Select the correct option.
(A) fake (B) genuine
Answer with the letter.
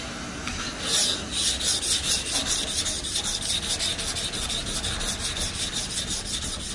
B